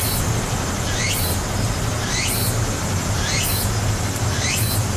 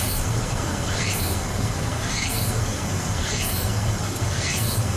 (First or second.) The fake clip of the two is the second